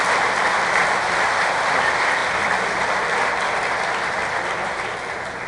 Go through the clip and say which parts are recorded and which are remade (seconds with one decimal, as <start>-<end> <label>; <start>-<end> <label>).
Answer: 0.0-5.5 recorded